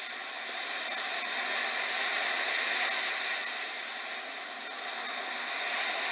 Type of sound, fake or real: real